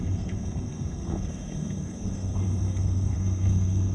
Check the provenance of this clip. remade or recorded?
remade